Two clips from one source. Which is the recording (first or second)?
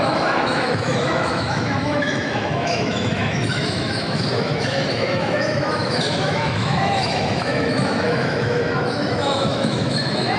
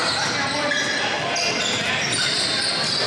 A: second